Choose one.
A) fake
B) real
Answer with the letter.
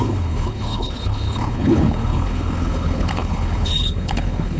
A